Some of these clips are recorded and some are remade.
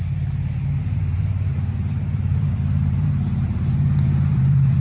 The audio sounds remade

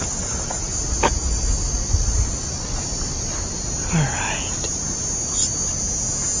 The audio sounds recorded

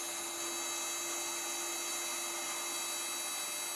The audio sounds recorded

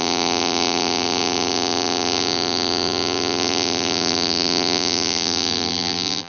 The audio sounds remade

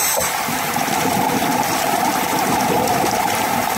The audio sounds remade